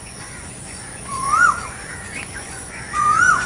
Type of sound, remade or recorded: remade